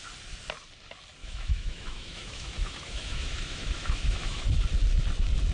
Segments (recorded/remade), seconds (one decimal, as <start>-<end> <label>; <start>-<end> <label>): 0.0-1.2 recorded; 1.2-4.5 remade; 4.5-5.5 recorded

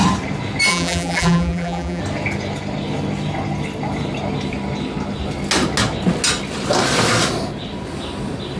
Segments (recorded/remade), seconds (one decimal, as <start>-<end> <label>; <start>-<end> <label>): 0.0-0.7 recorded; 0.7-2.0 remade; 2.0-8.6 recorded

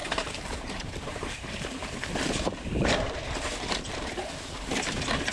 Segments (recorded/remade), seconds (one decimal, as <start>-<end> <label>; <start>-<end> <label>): 0.0-3.2 remade; 3.2-5.3 recorded

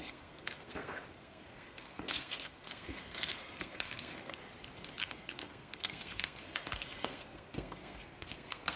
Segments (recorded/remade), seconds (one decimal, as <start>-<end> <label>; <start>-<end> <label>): 0.0-4.4 remade; 4.4-5.0 recorded; 5.0-8.8 remade